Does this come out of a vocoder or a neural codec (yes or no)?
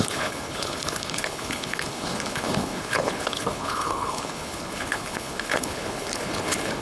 yes